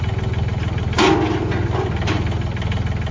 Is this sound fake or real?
real